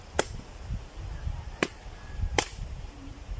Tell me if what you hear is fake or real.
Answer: fake